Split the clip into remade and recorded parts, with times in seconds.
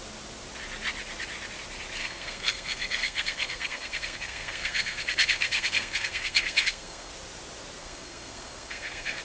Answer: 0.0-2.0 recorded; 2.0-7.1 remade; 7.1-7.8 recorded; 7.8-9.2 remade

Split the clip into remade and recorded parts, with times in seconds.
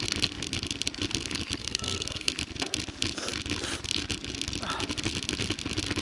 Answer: 0.0-1.6 recorded; 1.6-2.3 remade; 2.3-6.0 recorded